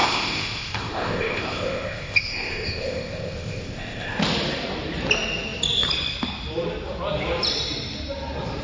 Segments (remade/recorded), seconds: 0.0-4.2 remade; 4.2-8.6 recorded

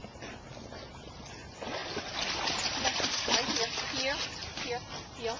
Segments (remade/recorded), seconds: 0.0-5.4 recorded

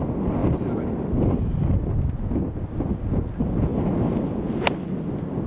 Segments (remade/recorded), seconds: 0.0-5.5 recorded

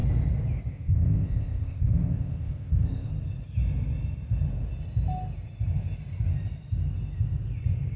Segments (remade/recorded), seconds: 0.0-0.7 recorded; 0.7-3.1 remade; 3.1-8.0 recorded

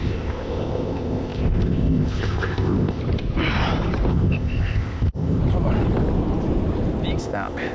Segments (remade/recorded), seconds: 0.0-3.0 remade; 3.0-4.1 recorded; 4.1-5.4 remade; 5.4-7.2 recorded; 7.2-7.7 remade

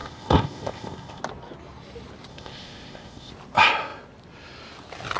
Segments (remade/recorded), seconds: 0.0-1.2 remade; 1.2-2.3 recorded; 2.3-3.3 remade; 3.3-5.2 recorded

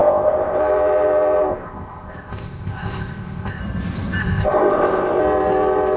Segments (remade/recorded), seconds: 0.0-0.6 remade; 0.6-1.5 recorded; 1.5-3.6 remade; 3.6-4.2 recorded; 4.2-5.2 remade; 5.2-6.0 recorded